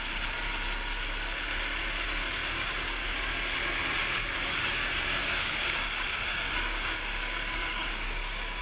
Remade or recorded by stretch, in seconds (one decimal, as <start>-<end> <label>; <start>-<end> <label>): 0.0-2.5 recorded; 2.5-3.2 remade; 3.2-4.0 recorded; 4.0-8.6 remade